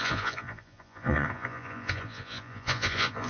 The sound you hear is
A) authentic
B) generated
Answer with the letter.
B